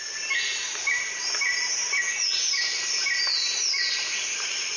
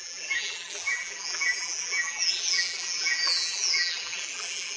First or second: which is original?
first